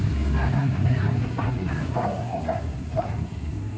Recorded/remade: remade